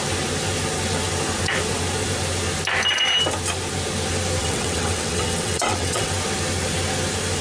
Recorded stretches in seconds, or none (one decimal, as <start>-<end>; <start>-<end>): 0.0-4.4; 6.1-7.4

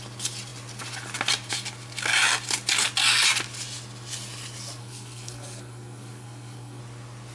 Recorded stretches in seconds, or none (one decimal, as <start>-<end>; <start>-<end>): 0.0-4.8; 6.8-7.3

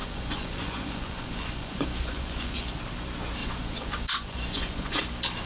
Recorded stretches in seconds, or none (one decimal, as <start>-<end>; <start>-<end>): 2.8-3.4; 5.0-5.5

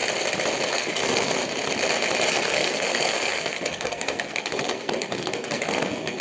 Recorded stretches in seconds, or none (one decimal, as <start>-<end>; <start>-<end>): 0.0-0.7; 1.4-2.3